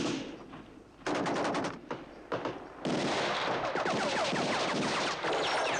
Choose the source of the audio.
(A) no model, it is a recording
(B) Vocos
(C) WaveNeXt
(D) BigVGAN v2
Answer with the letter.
D